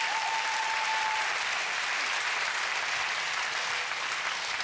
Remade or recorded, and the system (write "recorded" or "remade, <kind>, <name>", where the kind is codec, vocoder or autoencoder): recorded